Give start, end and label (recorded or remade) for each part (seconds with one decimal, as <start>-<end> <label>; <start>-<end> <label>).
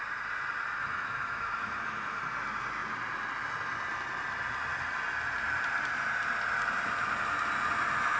0.0-0.9 recorded; 0.9-2.2 remade; 2.2-8.2 recorded